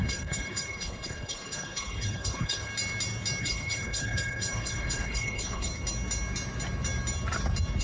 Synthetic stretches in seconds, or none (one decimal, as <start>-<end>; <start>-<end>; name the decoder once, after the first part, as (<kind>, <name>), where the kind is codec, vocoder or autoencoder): 0.0-2.7 (codec, HILCodec); 3.4-5.7